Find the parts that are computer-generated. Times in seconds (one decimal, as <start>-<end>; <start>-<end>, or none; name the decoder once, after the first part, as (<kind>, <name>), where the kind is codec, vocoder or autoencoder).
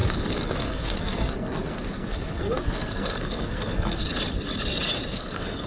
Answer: 0.0-4.1 (codec, SNAC); 5.1-5.7